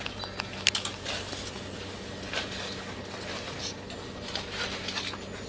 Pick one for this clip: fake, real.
real